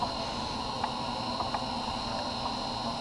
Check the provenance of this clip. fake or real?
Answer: real